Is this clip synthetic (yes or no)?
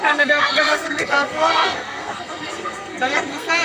yes